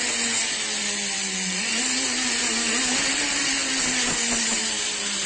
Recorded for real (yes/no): yes